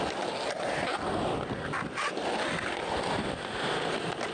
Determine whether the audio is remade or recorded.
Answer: recorded